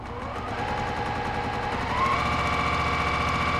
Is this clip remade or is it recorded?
recorded